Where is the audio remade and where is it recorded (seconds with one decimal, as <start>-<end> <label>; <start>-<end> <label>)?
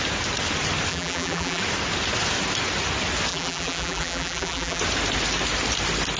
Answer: 0.0-0.9 recorded; 0.9-1.6 remade; 1.6-3.3 recorded; 3.3-4.8 remade; 4.8-6.2 recorded